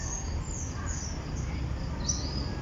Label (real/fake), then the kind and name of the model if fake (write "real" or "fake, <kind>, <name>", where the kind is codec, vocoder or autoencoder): real